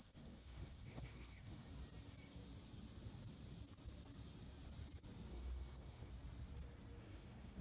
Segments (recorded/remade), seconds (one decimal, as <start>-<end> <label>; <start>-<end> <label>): 0.0-1.7 remade; 1.7-5.3 recorded; 5.3-6.1 remade; 6.1-7.0 recorded; 7.0-7.6 remade